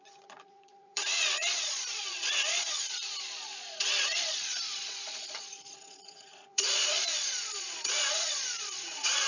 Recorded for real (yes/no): no